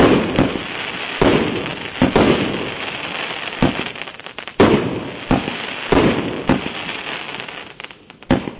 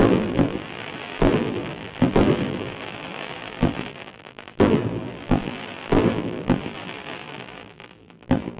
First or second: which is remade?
second